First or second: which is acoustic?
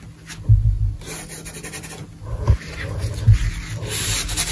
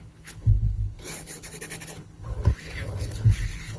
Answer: first